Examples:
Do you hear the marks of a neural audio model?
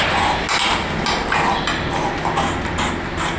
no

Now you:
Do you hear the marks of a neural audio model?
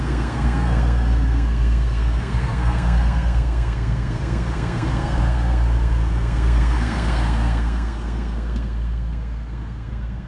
yes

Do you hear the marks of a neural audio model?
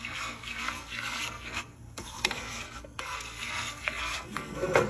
yes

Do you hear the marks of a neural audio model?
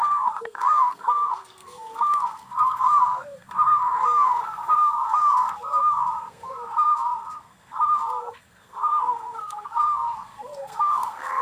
yes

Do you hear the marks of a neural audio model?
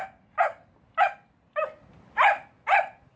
no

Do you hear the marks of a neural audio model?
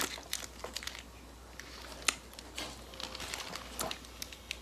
no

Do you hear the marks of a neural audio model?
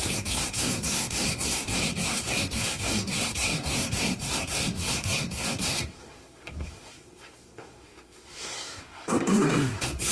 yes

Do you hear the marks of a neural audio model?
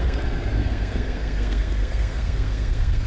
yes